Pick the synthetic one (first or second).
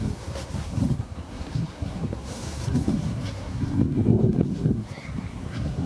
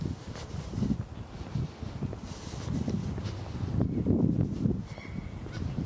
first